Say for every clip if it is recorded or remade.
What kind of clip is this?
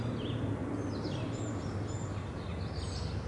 recorded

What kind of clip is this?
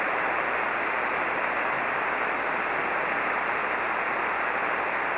recorded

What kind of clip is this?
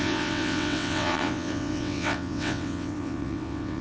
remade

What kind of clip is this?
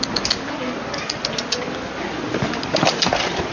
recorded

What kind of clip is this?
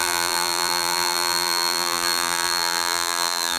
remade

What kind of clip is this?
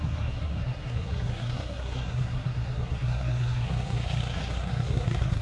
remade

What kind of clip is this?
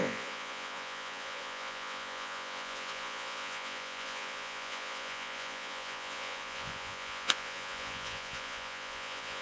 remade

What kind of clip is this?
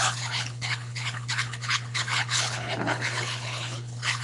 remade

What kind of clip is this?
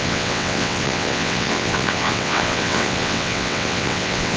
remade